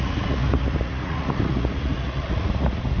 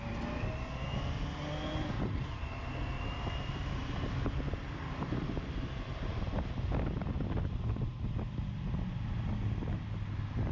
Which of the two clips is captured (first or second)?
second